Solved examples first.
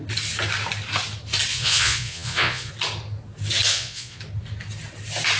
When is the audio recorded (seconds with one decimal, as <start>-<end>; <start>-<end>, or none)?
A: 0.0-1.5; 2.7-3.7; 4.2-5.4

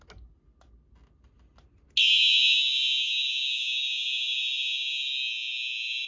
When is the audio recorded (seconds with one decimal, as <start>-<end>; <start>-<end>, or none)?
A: 0.0-6.1

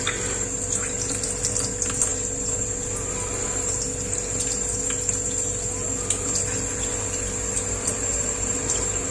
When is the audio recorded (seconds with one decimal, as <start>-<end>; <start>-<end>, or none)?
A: 0.0-9.1

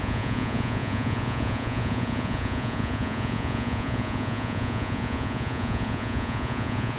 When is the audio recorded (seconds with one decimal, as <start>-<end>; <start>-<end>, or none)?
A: none

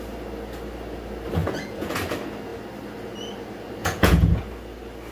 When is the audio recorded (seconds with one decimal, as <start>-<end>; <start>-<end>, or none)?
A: 0.0-1.4; 2.0-3.8; 4.4-5.1

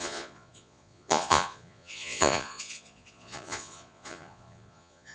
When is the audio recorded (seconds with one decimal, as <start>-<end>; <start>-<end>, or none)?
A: none

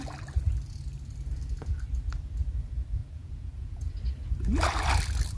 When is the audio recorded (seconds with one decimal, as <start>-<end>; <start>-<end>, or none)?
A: 0.0-3.0; 3.9-5.4